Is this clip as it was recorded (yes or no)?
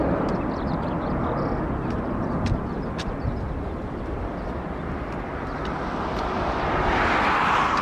yes